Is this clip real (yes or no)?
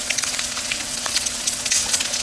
no